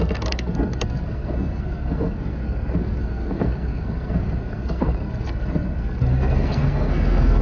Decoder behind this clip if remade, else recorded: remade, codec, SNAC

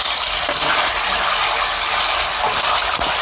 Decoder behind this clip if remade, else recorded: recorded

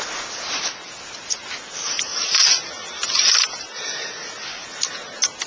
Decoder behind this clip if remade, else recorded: recorded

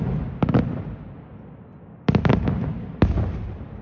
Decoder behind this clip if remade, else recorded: recorded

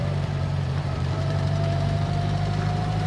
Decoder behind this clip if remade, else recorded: remade, vocoder, BigVGAN v2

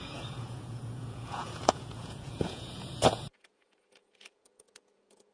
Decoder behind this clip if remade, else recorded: remade, vocoder, Vocos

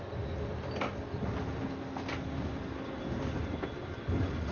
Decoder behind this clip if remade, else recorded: recorded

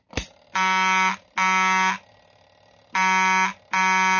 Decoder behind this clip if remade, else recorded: recorded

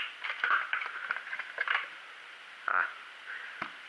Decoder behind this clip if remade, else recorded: recorded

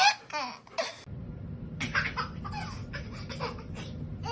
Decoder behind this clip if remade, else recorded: recorded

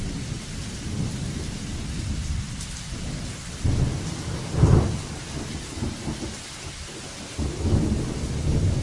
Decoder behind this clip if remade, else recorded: recorded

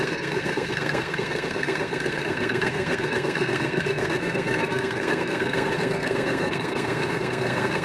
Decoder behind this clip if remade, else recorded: remade, codec, SNAC